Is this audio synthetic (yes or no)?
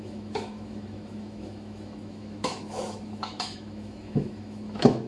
yes